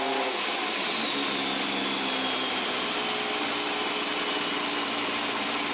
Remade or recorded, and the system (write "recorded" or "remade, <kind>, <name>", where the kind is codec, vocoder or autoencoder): recorded